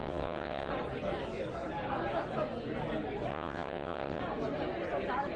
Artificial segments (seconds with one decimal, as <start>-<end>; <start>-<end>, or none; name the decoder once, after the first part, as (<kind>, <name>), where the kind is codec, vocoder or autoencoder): 0.0-0.7 (vocoder, WaveNeXt); 3.3-4.2